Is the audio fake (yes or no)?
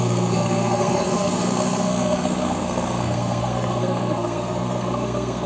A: yes